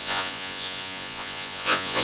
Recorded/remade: remade